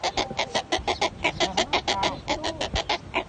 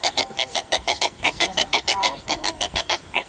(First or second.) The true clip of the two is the first